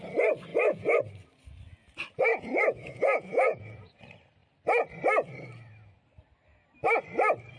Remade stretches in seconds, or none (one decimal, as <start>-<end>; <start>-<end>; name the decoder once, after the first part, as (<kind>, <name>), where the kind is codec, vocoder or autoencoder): 0.5-1.0 (vocoder, Vocos); 2.3-4.0